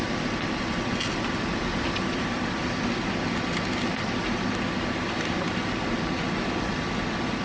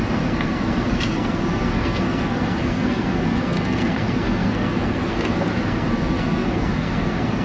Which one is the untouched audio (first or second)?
first